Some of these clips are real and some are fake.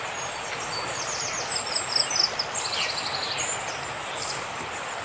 real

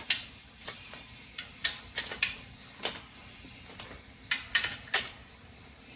fake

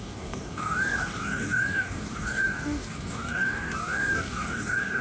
fake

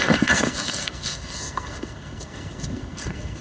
fake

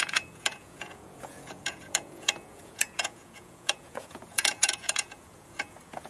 fake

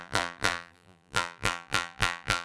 fake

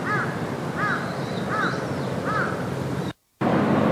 real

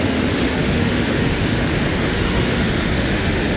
fake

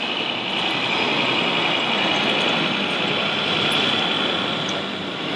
real